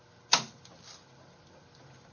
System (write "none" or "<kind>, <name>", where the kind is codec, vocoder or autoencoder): none